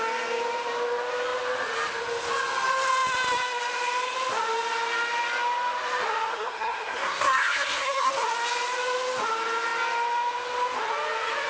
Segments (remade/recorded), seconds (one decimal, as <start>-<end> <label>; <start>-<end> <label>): 0.0-6.3 recorded; 6.3-8.1 remade; 8.1-11.5 recorded